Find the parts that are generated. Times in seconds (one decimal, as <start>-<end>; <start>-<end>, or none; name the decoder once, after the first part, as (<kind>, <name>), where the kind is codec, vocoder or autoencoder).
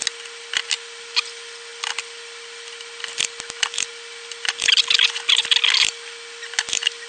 none